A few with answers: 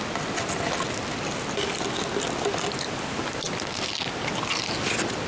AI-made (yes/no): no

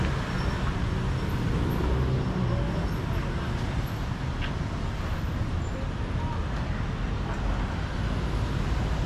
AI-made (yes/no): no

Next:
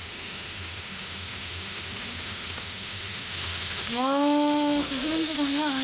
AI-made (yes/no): yes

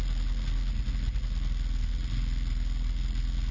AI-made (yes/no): no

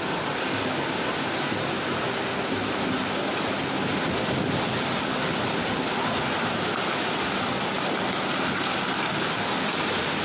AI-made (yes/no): no